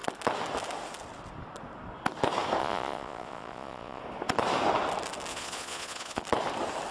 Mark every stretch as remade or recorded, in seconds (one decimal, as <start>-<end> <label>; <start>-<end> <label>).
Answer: 0.0-2.6 recorded; 2.6-4.0 remade; 4.0-5.3 recorded; 5.3-6.2 remade; 6.2-6.9 recorded